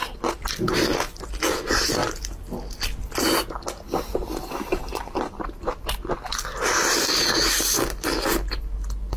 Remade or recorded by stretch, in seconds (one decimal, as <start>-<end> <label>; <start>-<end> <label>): 0.0-9.2 recorded